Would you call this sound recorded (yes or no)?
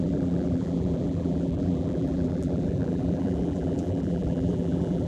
no